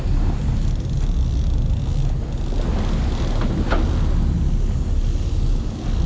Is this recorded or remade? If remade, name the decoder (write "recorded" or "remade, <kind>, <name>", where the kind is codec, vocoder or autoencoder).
recorded